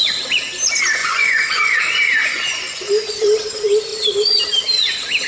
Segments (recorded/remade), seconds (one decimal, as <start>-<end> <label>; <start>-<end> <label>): 0.0-1.0 recorded; 1.0-1.8 remade; 1.8-2.2 recorded; 2.2-3.2 remade; 3.2-5.3 recorded